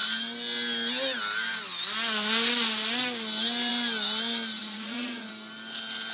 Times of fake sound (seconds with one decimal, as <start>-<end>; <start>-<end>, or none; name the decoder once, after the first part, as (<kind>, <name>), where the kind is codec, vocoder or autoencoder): 4.6-5.3 (vocoder, Vocos)